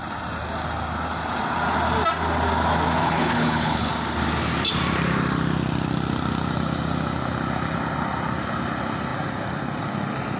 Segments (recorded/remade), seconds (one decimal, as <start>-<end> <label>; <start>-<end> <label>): 0.0-3.0 recorded; 3.0-3.9 remade; 3.9-10.4 recorded